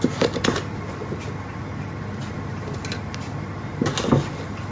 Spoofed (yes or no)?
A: no